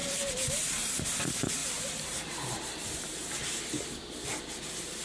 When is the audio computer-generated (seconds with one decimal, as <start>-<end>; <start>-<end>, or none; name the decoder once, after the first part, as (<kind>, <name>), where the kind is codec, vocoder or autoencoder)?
0.0-1.2 (vocoder, BigVGAN v2); 1.6-3.3